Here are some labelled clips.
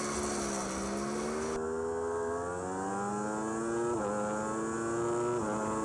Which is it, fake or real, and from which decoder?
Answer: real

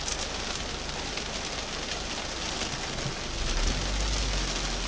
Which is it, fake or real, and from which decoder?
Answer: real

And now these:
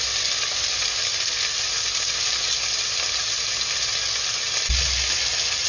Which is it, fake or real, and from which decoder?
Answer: real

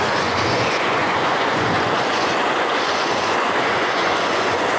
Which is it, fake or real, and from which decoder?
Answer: fake, vocoder, Vocos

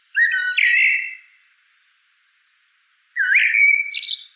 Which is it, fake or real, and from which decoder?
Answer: real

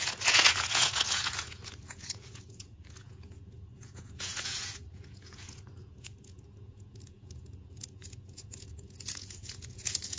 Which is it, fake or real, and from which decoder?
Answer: fake, vocoder, Vocos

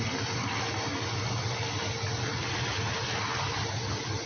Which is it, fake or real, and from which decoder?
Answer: real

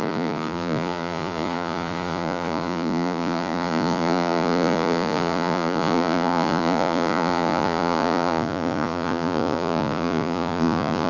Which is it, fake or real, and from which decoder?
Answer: fake, vocoder, Vocos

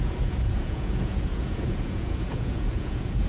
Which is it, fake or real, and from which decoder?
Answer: fake, vocoder, Vocos